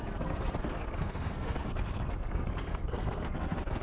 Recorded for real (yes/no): no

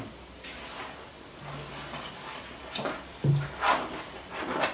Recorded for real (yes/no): yes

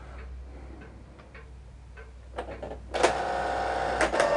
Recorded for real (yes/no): yes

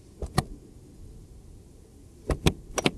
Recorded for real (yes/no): yes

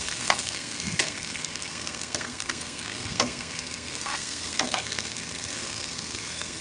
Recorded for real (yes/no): no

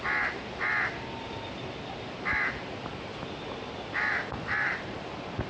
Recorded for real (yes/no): yes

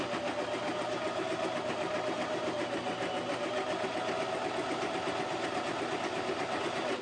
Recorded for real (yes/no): yes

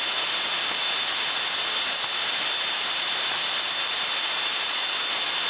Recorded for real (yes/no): no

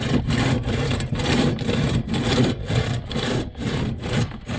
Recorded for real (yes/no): yes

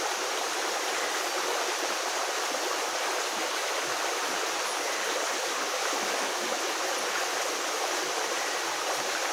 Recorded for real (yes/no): yes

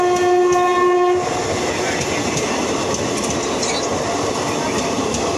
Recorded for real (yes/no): yes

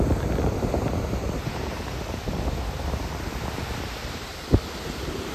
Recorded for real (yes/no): yes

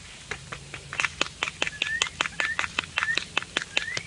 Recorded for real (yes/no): yes